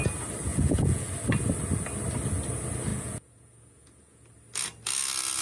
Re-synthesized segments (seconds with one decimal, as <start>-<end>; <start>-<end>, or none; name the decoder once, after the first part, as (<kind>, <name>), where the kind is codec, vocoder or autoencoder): 0.5-1.1 (vocoder, Vocos); 2.9-4.3